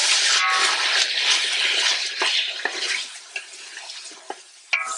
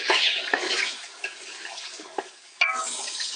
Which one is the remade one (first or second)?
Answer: second